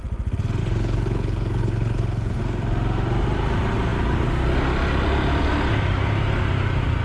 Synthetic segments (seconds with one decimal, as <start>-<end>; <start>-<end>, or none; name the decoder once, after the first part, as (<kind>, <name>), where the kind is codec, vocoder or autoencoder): 0.6-2.4 (codec, HILCodec)